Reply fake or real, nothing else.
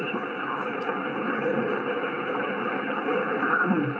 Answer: fake